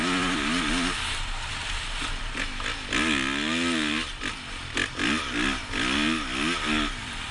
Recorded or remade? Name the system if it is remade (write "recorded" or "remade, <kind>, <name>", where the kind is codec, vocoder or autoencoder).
recorded